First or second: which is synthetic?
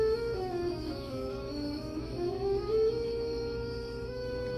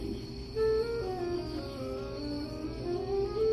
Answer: first